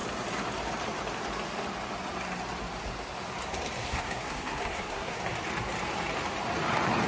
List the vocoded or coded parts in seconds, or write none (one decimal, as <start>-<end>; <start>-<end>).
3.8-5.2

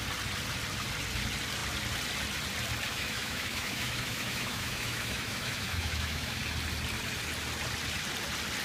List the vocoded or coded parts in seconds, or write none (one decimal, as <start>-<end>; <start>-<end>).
2.9-6.4

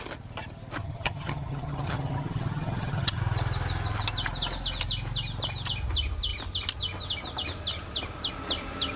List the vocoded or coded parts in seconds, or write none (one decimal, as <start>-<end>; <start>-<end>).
0.8-3.2